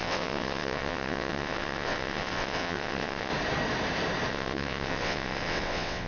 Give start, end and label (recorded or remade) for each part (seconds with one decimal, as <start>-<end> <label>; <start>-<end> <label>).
0.0-3.3 remade; 3.3-4.3 recorded; 4.3-6.1 remade